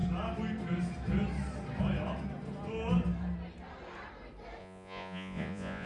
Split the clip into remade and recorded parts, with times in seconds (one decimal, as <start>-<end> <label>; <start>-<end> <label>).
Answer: 0.0-4.6 recorded; 4.6-5.9 remade